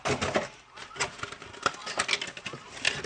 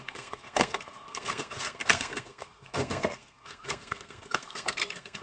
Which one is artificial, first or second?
second